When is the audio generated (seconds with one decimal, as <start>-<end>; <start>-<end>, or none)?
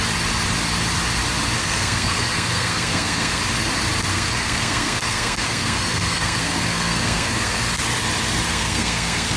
1.6-3.4; 4.1-7.6; 8.5-9.4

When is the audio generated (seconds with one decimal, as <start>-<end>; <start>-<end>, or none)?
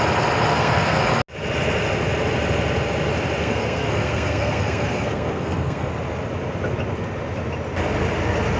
0.5-1.0; 3.4-5.9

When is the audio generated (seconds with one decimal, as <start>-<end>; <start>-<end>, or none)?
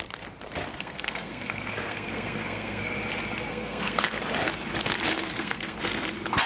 0.7-2.8; 3.5-4.2; 5.1-5.8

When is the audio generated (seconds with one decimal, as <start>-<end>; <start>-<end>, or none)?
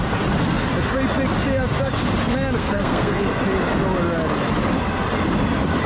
2.6-3.2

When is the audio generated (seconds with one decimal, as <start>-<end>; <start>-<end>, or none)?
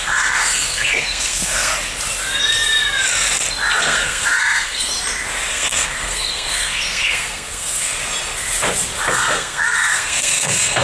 0.0-1.7; 3.8-4.9; 5.5-8.0; 9.1-10.8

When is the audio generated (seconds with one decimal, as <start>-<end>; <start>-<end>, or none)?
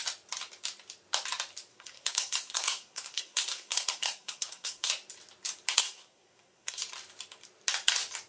1.7-4.9; 5.8-6.8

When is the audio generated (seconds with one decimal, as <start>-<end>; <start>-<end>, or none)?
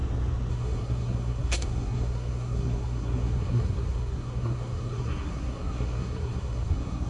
0.5-7.1